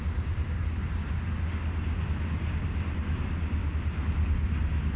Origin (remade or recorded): recorded